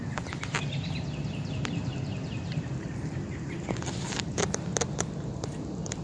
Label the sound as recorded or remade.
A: recorded